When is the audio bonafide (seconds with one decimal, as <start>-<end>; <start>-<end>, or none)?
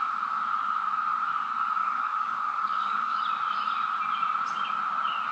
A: 0.0-1.8; 3.2-5.3